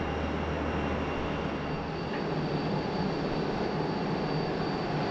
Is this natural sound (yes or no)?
yes